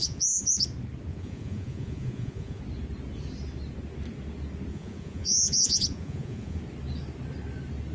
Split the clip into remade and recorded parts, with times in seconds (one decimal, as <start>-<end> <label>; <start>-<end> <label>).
0.0-0.6 remade; 0.6-1.1 recorded; 1.1-2.6 remade; 2.6-4.7 recorded; 4.7-6.6 remade; 6.6-7.9 recorded